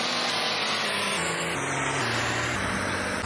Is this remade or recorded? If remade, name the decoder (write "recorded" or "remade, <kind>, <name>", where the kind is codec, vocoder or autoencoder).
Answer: recorded